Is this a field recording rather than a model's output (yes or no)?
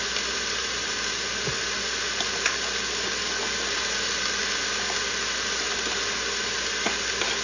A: yes